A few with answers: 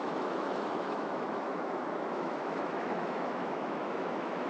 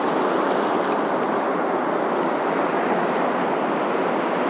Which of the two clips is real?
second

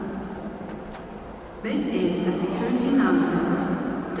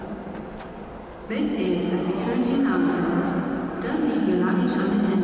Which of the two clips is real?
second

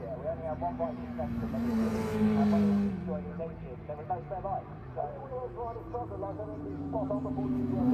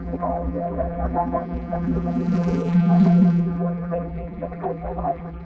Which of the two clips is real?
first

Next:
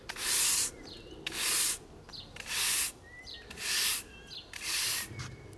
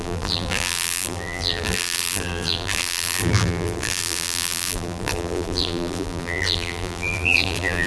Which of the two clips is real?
first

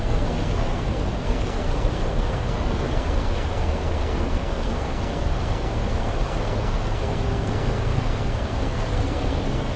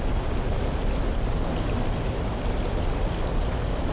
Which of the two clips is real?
second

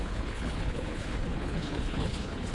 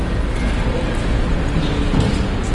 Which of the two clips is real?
second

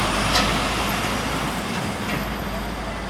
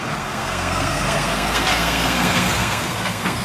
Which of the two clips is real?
first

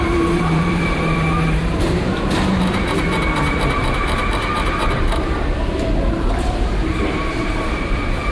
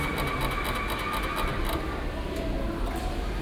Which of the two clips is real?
second